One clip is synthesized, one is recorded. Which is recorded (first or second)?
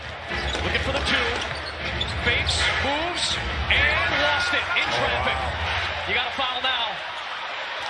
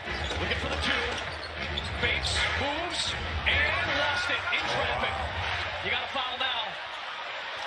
first